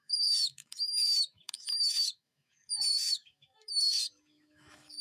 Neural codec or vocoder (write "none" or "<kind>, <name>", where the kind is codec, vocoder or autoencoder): autoencoder, DAC-VAE